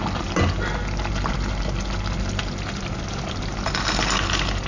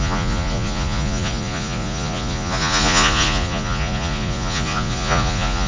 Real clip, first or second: first